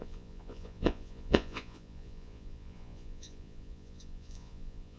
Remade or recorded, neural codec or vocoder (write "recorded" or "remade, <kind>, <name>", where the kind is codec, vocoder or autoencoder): remade, vocoder, Vocos